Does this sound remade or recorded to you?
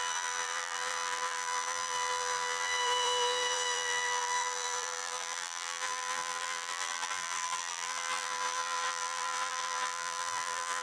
remade